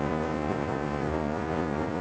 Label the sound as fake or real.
fake